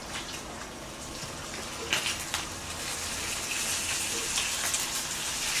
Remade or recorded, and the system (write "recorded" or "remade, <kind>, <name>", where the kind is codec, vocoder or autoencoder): recorded